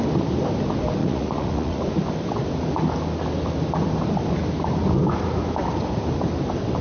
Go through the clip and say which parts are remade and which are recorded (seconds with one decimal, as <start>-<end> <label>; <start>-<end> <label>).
0.0-1.0 recorded; 1.0-1.8 remade; 1.8-6.8 recorded